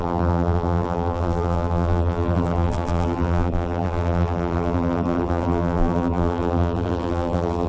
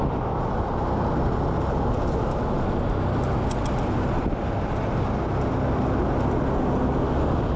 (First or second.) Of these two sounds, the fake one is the first